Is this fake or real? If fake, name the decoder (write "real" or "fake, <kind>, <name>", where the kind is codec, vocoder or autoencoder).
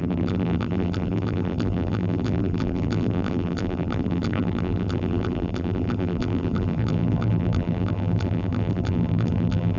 fake, vocoder, BigVGAN v2